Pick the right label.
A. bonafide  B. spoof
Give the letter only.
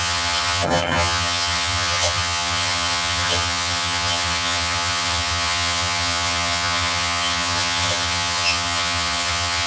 B